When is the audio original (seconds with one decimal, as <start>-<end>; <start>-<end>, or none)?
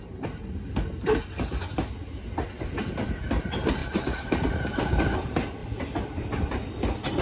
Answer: 0.0-3.8; 4.8-7.2